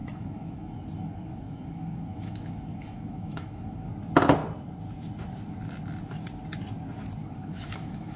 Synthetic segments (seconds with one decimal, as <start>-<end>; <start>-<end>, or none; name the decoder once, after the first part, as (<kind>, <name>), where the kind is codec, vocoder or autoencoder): 0.0-3.9 (autoencoder, DAC-VAE); 7.2-8.2